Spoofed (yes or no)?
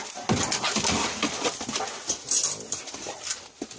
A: no